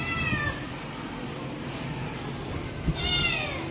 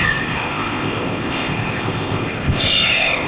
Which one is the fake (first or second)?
second